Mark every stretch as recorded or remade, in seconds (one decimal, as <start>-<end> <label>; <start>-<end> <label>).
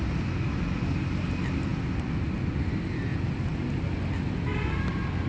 0.0-5.3 recorded